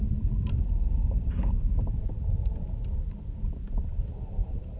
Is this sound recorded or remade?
remade